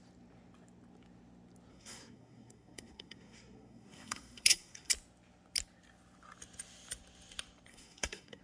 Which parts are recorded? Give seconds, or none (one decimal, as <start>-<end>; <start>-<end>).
0.0-1.7; 4.9-7.7